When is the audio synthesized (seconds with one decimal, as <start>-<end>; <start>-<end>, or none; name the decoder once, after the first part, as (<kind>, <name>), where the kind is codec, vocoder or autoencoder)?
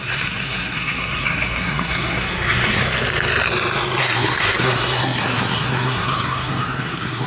0.0-2.8 (codec, SNAC); 4.0-7.3